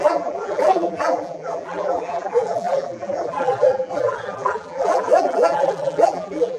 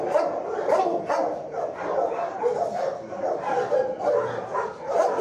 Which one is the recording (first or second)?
second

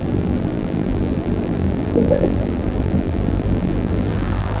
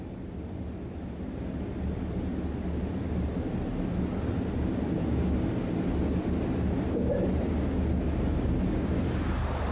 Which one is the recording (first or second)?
second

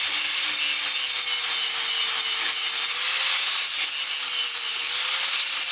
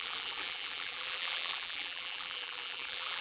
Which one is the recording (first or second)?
first